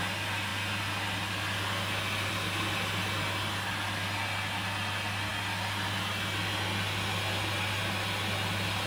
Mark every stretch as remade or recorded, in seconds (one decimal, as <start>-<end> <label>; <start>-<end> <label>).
0.0-8.9 recorded